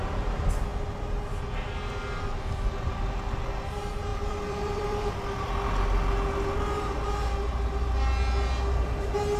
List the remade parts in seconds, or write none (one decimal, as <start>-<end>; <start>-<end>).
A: 4.1-5.1